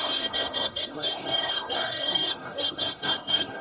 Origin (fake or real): fake